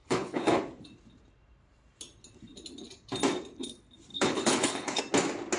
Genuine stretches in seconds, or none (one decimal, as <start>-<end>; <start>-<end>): 0.6-4.1; 5.0-5.6